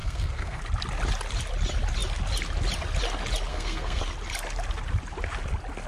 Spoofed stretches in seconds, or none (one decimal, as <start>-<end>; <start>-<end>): 0.0-0.6; 3.5-4.0